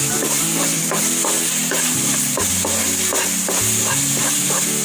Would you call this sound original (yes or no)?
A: yes